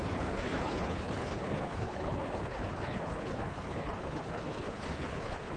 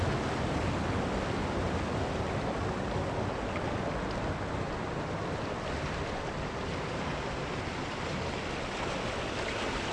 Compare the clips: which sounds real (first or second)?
second